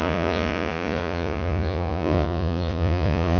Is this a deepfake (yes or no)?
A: yes